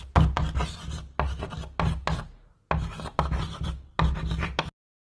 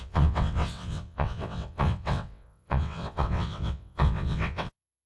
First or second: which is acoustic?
first